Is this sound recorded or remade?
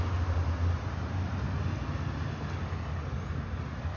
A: recorded